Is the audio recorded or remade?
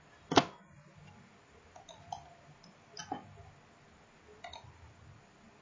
recorded